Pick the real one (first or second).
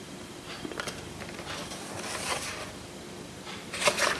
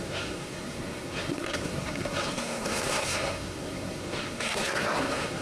first